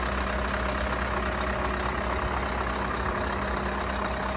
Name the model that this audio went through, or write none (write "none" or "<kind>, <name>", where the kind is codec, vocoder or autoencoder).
none